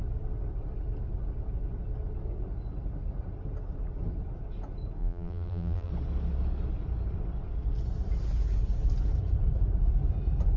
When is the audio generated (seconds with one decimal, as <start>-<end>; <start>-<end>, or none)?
5.0-5.9